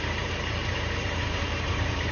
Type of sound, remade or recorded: remade